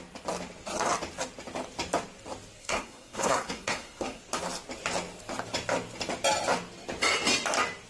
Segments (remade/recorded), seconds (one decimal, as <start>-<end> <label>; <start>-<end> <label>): 0.0-2.6 recorded; 2.6-4.2 remade; 4.2-7.9 recorded